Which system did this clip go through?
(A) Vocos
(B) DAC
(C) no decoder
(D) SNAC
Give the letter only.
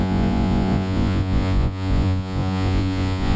A